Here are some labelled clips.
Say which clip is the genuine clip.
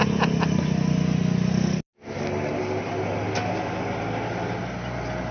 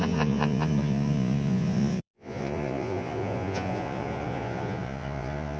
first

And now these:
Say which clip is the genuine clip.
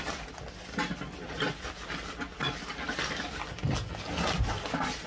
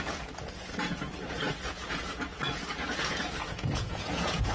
first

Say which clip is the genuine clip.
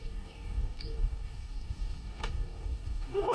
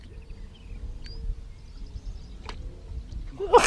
second